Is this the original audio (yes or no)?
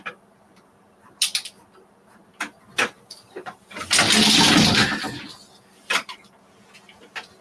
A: yes